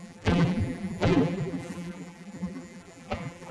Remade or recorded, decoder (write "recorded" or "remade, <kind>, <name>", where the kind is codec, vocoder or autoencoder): remade, vocoder, BigVGAN v2